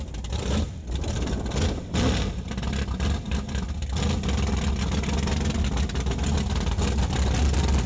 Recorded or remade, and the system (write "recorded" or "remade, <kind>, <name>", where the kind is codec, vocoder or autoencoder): recorded